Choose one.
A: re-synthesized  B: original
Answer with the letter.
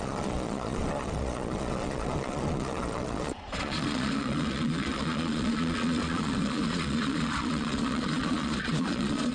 A